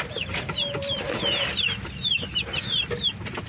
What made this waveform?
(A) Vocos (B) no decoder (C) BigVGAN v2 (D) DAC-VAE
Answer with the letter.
B